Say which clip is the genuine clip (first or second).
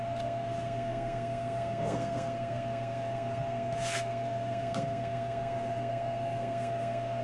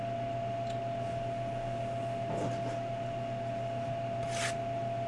second